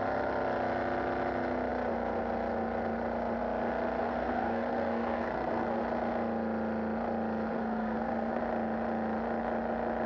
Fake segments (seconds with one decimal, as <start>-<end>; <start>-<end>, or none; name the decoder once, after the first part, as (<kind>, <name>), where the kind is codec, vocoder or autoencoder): 4.0-5.8 (codec, SNAC); 7.5-8.4